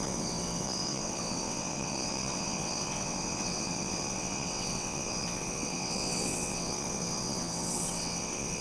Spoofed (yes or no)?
yes